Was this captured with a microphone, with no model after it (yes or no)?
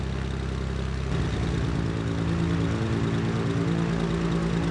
yes